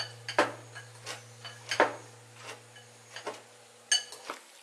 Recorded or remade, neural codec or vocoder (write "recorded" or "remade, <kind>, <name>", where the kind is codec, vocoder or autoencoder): recorded